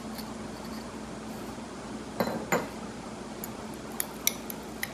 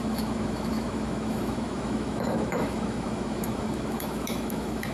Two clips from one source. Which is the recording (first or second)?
first